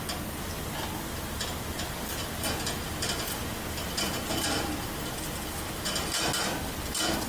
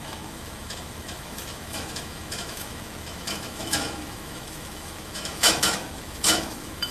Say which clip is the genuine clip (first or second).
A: first